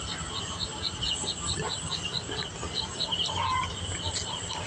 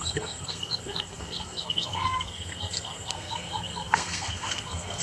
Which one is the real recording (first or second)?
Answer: first